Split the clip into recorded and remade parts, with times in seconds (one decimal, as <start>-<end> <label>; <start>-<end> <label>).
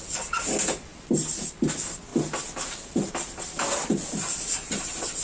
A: 0.0-5.2 recorded